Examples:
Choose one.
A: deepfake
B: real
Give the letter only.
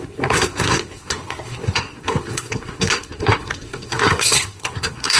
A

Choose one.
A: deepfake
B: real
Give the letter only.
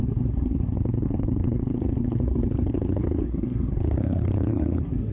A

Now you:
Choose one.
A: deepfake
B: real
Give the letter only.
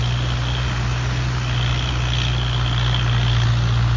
B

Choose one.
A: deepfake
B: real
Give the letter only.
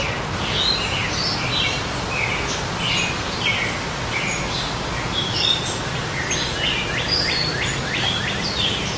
B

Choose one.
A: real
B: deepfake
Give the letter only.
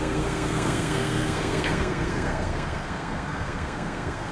B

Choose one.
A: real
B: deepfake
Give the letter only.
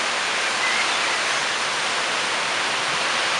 A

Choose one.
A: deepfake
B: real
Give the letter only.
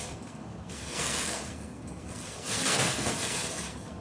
A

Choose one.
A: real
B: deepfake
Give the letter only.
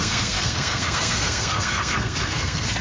B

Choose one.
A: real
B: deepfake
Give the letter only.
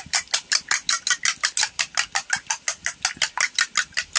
A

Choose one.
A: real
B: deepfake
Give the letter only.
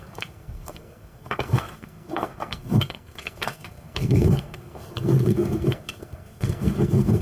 B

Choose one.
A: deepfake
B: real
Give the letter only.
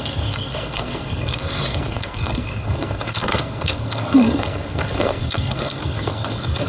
A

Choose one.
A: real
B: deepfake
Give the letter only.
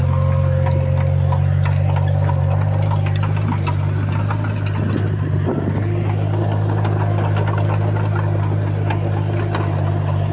A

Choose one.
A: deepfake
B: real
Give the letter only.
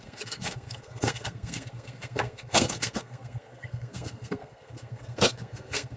A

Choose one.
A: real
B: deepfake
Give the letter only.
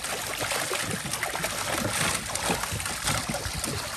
A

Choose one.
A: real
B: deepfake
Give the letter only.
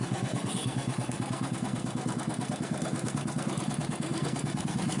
B